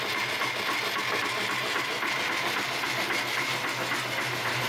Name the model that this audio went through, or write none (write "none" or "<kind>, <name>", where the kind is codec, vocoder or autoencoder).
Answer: none